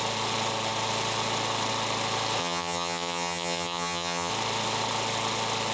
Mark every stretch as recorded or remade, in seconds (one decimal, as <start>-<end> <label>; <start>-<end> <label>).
0.0-2.4 recorded; 2.4-4.3 remade; 4.3-5.7 recorded